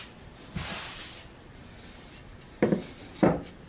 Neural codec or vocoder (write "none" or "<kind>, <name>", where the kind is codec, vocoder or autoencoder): vocoder, BigVGAN v2